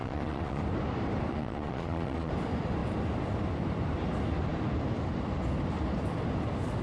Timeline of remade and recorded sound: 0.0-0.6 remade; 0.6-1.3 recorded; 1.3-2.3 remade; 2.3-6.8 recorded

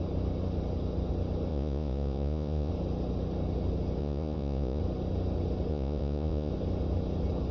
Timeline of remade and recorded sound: 0.0-1.5 recorded; 1.5-2.7 remade; 2.7-4.0 recorded; 4.0-4.8 remade; 4.8-5.7 recorded; 5.7-6.5 remade; 6.5-7.5 recorded

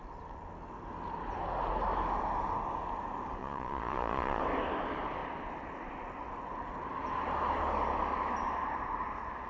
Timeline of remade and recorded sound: 0.0-3.4 recorded; 3.4-4.4 remade; 4.4-9.5 recorded

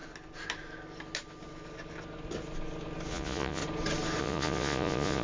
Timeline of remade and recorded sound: 0.0-3.1 recorded; 3.1-3.6 remade; 3.6-4.2 recorded; 4.2-5.2 remade

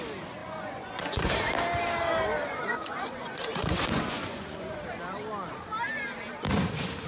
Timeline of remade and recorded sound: 0.0-0.4 recorded; 0.4-1.3 remade; 1.3-2.5 recorded; 2.5-4.8 remade; 4.8-7.1 recorded